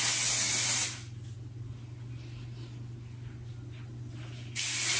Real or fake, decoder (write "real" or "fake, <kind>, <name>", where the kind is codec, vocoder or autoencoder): real